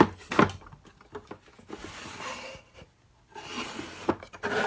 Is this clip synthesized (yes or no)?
no